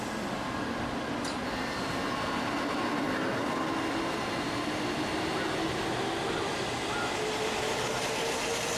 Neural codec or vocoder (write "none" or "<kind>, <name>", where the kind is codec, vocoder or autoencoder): none